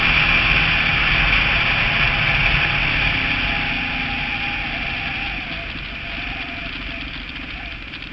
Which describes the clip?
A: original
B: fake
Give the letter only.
A